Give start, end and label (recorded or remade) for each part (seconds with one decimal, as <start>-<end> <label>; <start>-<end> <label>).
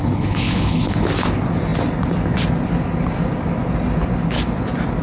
0.0-1.1 remade; 1.1-5.0 recorded